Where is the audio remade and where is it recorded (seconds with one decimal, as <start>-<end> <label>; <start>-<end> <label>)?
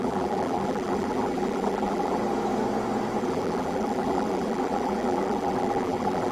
0.0-2.2 remade; 2.2-3.2 recorded; 3.2-6.3 remade